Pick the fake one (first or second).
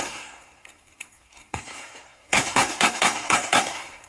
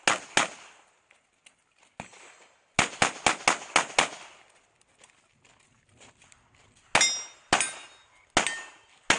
first